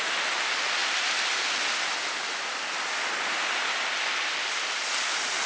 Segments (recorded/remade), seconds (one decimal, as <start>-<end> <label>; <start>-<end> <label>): 0.0-5.5 recorded

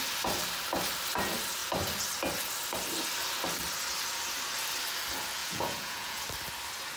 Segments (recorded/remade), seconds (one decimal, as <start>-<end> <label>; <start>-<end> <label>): 0.0-5.4 recorded; 5.4-6.2 remade; 6.2-7.0 recorded

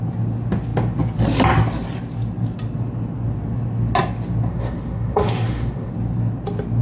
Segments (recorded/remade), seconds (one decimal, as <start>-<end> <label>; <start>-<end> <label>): 0.0-4.5 recorded; 4.5-5.9 remade; 5.9-6.8 recorded

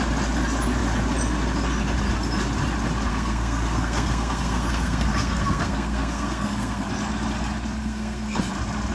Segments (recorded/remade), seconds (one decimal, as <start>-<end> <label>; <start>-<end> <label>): 0.0-3.1 recorded; 3.1-6.9 remade; 6.9-7.8 recorded; 7.8-8.4 remade; 8.4-8.9 recorded

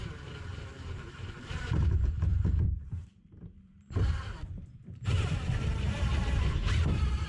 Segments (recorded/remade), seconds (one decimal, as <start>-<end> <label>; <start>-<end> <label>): 0.0-7.3 remade

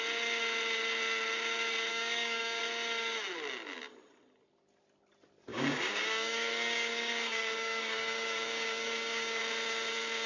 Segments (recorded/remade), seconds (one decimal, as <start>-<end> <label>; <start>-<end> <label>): 0.0-1.9 recorded; 1.9-2.6 remade; 2.6-5.5 recorded; 5.5-9.4 remade; 9.4-10.3 recorded

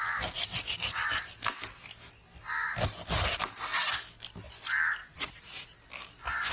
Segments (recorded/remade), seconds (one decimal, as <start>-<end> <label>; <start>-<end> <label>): 0.0-5.0 recorded; 5.0-5.7 remade; 5.7-6.5 recorded